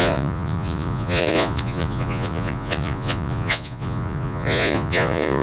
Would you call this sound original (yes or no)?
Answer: no